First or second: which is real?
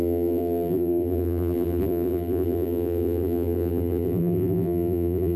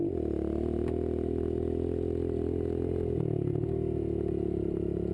second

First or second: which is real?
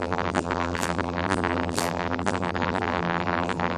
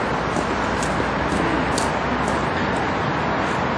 second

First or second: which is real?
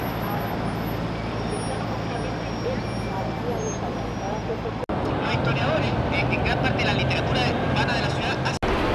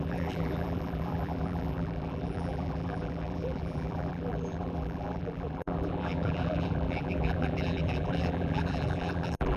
first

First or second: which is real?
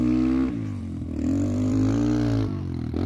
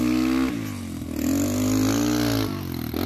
second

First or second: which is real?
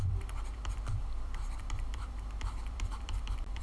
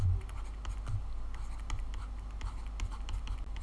second